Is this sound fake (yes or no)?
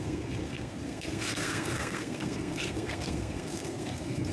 yes